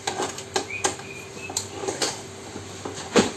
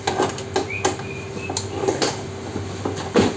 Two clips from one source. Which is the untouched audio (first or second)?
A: second